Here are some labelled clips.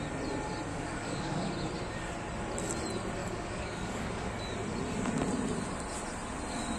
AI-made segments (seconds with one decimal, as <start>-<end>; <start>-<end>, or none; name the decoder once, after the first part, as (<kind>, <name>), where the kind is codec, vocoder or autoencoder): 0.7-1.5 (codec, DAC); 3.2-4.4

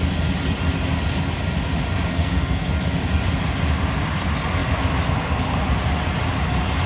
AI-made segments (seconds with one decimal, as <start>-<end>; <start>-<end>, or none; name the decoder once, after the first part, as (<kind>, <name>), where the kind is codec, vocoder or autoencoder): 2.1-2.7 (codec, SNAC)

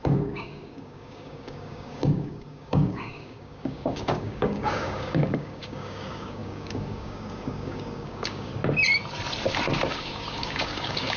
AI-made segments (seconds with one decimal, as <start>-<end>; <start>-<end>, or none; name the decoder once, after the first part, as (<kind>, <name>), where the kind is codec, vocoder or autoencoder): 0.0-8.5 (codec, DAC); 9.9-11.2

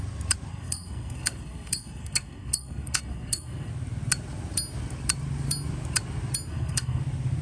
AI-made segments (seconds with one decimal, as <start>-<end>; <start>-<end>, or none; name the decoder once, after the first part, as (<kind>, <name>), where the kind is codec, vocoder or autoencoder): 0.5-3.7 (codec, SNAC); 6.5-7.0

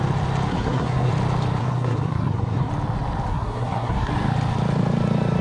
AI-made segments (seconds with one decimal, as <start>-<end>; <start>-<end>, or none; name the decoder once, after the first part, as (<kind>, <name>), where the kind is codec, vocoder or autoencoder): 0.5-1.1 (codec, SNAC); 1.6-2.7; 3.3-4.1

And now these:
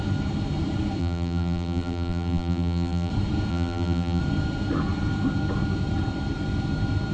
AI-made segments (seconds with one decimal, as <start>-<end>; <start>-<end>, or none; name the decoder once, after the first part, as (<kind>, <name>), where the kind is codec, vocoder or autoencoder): 1.0-3.1 (vocoder, BigVGAN v2); 3.5-4.2

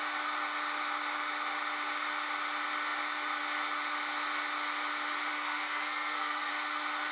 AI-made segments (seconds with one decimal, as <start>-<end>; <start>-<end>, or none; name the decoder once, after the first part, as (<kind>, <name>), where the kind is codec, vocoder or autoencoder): 5.3-6.5 (codec, SNAC)

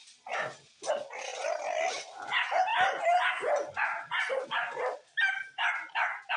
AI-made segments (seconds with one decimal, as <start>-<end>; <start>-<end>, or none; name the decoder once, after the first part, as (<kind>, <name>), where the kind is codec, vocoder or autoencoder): none